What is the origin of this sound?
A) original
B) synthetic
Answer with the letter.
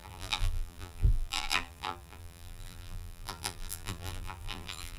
B